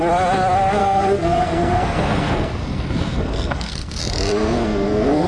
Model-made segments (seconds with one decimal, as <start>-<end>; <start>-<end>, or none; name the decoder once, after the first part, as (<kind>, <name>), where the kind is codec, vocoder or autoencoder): 0.8-4.0 (codec, SNAC); 4.4-5.3